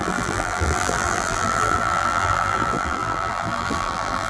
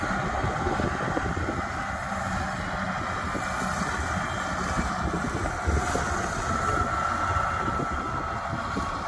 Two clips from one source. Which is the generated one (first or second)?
first